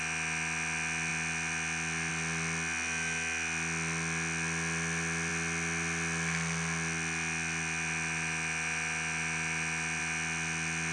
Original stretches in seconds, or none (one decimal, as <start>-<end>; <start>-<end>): 0.0-10.9